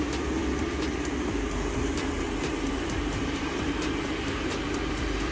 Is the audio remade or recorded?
remade